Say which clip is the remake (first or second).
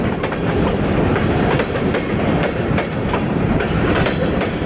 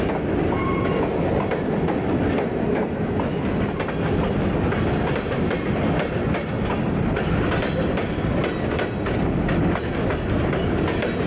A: first